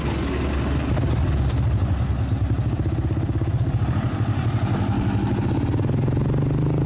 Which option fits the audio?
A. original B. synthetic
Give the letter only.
A